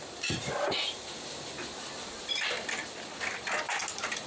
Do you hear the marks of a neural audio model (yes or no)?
no